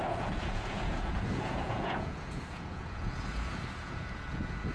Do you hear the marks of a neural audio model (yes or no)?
yes